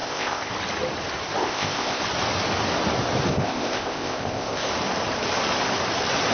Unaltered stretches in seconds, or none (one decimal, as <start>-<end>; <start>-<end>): 0.5-1.4; 2.0-3.3; 4.7-6.3